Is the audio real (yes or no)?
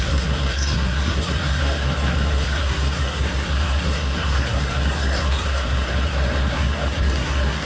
no